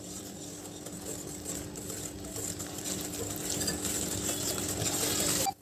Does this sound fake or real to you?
real